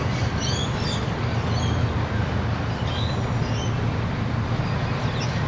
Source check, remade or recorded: recorded